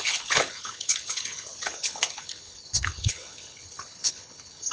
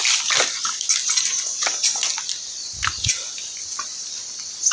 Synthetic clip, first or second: first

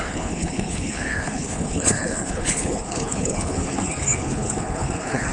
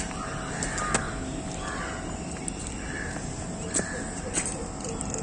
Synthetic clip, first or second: first